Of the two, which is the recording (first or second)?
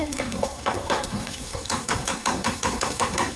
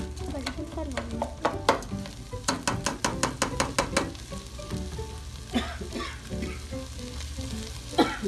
second